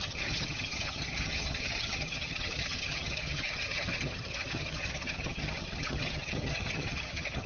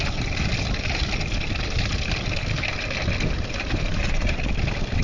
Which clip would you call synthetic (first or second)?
first